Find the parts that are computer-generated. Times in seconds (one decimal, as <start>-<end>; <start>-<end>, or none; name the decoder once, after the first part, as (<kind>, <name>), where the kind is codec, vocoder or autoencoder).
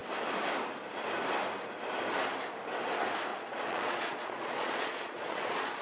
3.3-5.8 (vocoder, Vocos)